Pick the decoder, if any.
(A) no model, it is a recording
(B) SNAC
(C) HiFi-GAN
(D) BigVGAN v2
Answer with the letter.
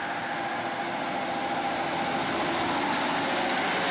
A